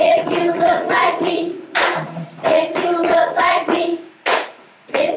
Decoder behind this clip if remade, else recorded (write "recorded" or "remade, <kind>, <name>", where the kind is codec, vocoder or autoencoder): remade, vocoder, Vocos